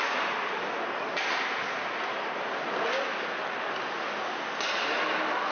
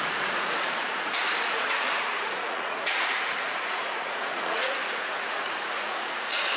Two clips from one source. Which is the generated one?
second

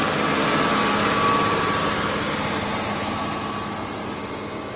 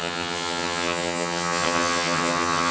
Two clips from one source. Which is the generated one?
second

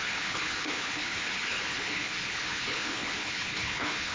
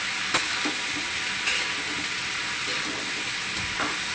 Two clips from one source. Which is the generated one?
first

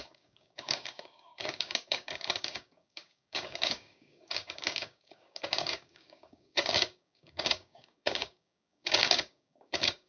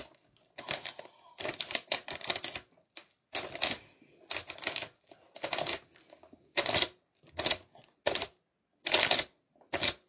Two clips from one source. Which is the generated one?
first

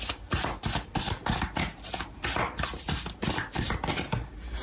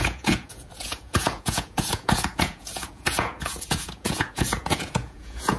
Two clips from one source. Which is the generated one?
second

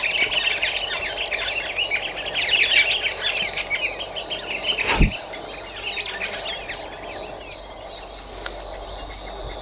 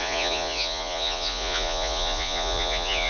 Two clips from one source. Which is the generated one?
second